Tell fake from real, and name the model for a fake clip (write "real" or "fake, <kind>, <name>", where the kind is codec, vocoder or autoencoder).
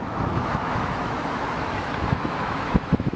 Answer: fake, autoencoder, DAC-VAE